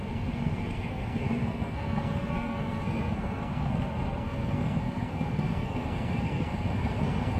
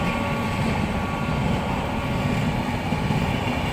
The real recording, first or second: second